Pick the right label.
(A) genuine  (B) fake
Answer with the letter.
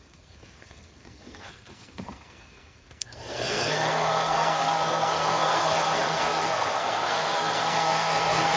B